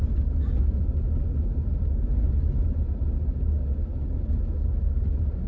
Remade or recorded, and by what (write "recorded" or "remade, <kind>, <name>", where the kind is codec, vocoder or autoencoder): recorded